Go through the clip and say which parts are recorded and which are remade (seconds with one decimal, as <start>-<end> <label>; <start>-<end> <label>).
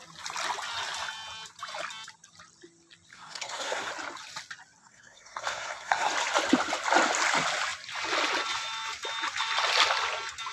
0.0-3.1 recorded; 3.1-3.9 remade; 3.9-4.8 recorded; 4.8-6.1 remade; 6.1-10.5 recorded